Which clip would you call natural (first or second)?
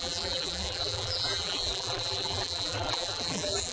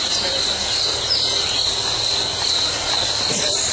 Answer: second